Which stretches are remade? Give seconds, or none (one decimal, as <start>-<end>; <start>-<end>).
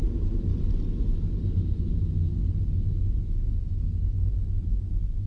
none